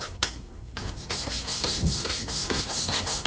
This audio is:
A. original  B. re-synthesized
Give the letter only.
B